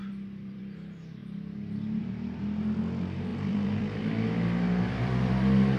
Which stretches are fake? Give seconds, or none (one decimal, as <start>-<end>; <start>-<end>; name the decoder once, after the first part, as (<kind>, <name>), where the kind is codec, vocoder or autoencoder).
0.0-0.6 (vocoder, BigVGAN v2); 3.3-5.8